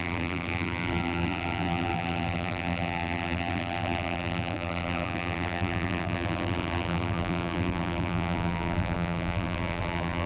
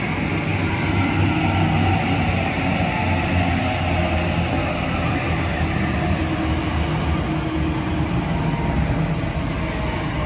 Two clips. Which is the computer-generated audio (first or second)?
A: first